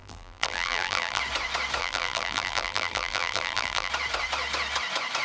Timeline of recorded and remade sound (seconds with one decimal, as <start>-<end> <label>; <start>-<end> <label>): 0.0-1.2 remade; 1.2-1.8 recorded; 1.8-3.9 remade; 3.9-5.2 recorded